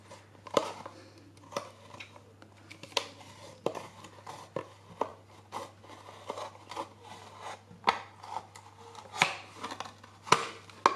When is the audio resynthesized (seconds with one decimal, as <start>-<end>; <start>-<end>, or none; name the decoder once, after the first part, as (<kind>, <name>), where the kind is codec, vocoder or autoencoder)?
none